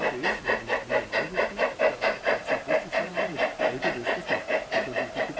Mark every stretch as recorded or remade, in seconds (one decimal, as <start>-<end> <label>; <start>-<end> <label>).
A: 0.0-2.9 recorded; 2.9-5.0 remade; 5.0-5.4 recorded